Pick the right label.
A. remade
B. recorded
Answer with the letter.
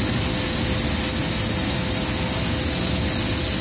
B